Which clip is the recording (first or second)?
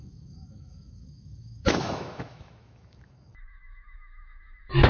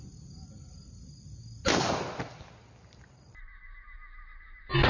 second